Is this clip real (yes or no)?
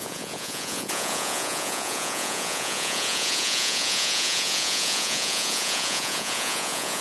no